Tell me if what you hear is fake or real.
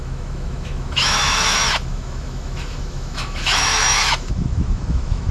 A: fake